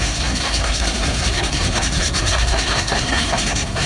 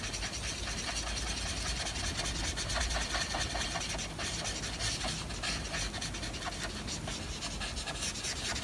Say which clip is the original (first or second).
second